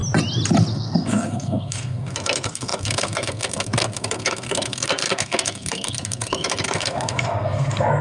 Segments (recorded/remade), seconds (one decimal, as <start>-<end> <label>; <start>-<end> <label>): 0.0-0.7 recorded; 0.7-8.0 remade